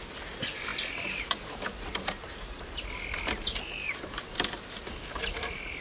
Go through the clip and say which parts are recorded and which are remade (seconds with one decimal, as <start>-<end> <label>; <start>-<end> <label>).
0.0-5.8 recorded

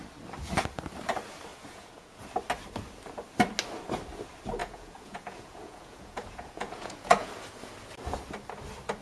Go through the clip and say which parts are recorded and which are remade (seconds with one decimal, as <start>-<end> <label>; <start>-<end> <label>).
0.0-1.5 recorded; 1.5-2.3 remade; 2.3-4.6 recorded; 4.6-7.3 remade; 7.3-9.0 recorded

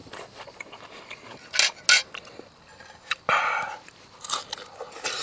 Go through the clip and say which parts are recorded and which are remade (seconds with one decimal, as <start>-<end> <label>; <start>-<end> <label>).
0.0-5.2 recorded

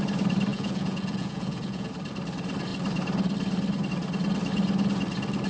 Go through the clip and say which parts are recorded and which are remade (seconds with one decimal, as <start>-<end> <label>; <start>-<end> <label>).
0.0-0.5 recorded; 0.5-1.9 remade; 1.9-5.5 recorded

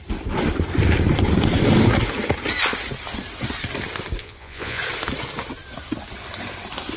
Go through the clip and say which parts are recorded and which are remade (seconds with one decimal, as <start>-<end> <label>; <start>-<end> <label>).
0.0-4.2 recorded; 4.2-4.8 remade; 4.8-7.0 recorded

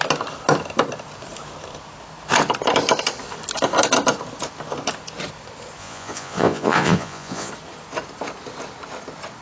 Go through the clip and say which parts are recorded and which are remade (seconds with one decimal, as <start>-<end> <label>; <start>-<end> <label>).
0.0-5.8 recorded; 5.8-7.5 remade; 7.5-9.4 recorded